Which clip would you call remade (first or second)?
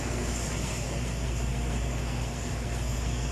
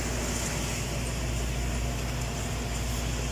first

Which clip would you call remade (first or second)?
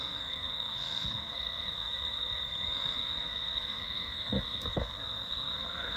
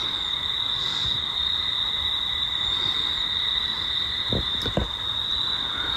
first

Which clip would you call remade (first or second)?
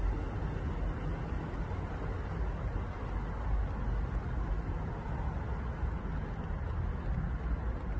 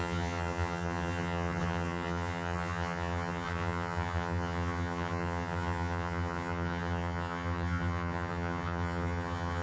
second